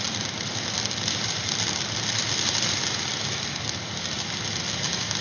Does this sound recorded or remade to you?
recorded